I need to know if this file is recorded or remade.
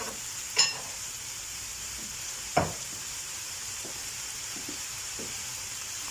remade